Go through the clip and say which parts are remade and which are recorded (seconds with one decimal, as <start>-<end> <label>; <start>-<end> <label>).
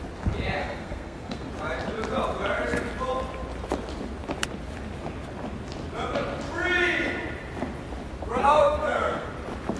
0.0-0.6 recorded; 0.6-1.5 remade; 1.5-8.4 recorded; 8.4-9.3 remade; 9.3-9.8 recorded